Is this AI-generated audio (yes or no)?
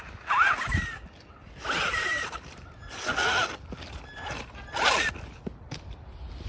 no